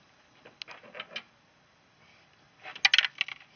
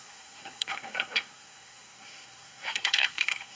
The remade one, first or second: second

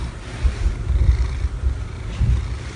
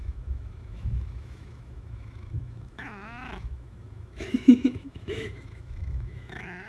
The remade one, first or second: second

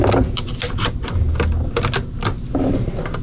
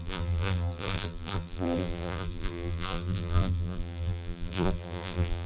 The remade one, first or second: second